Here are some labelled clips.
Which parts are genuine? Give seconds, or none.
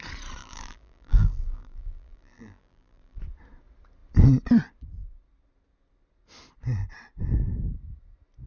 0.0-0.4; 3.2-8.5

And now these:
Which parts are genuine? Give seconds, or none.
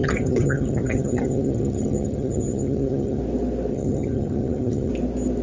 3.2-3.7; 4.9-5.4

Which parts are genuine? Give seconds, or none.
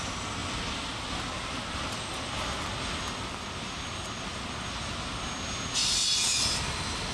0.0-7.1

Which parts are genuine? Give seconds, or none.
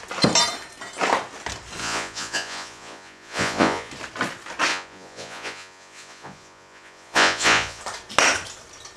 0.0-1.8; 3.9-4.7; 7.8-9.0